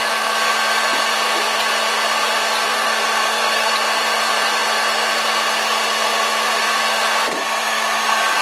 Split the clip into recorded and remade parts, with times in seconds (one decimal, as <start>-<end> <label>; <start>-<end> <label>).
0.0-2.7 recorded; 2.7-3.7 remade; 3.7-8.4 recorded